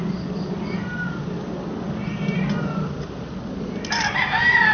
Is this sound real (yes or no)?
yes